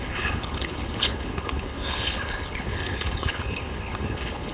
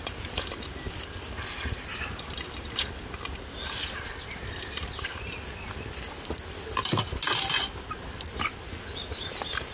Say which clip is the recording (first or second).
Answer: second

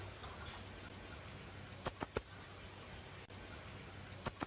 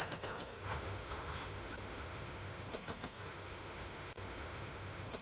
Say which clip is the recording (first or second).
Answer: first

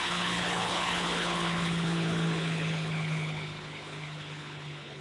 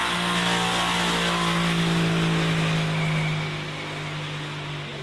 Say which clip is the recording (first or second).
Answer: second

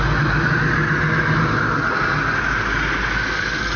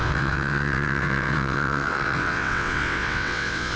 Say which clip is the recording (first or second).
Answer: first